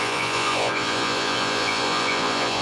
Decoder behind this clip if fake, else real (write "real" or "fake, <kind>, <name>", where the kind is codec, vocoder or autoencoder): fake, vocoder, Vocos